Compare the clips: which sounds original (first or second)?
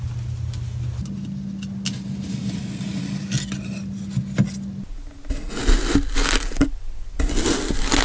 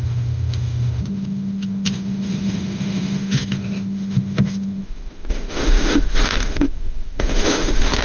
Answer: first